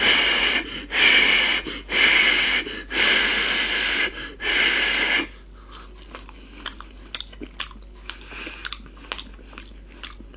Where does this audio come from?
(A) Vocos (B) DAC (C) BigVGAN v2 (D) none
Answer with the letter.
D